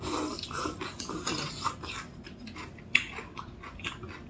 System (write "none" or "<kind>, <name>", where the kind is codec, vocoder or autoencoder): vocoder, BigVGAN v2